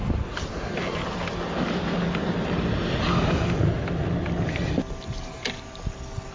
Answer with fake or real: real